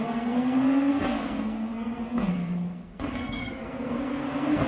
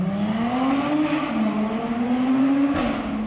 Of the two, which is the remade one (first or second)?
first